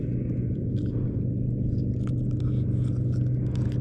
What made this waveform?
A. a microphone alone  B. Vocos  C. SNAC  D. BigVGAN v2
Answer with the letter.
A